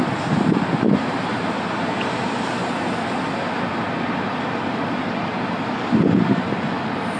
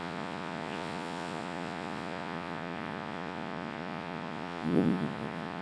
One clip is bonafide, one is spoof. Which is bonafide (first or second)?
first